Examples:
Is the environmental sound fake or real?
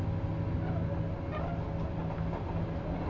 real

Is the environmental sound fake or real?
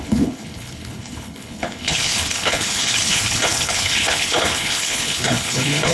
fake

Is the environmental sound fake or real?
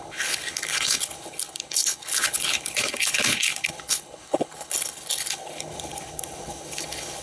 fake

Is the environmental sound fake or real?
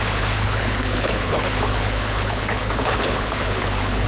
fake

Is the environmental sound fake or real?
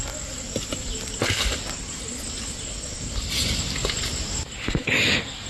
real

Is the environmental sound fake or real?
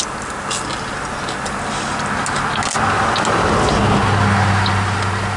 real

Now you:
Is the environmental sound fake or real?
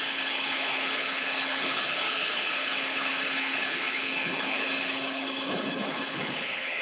fake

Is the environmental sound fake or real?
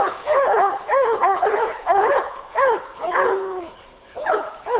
fake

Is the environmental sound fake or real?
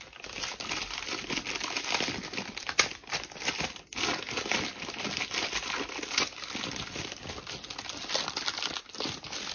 real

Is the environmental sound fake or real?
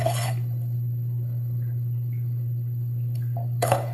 fake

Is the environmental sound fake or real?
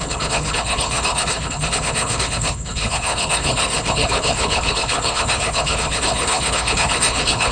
fake